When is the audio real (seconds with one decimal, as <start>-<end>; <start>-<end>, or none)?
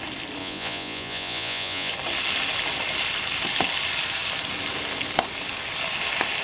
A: 0.0-0.4; 1.9-6.4